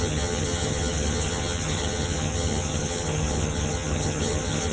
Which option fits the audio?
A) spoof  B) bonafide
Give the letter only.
A